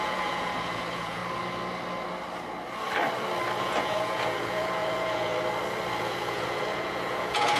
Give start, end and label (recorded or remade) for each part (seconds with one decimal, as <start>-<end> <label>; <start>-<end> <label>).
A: 0.0-1.2 remade; 1.2-3.6 recorded; 3.6-5.3 remade; 5.3-6.0 recorded; 6.0-7.6 remade